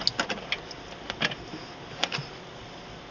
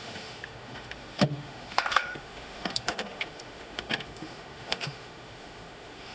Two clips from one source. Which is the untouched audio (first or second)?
first